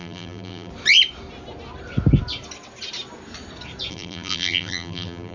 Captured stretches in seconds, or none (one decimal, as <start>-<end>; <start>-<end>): 0.7-3.9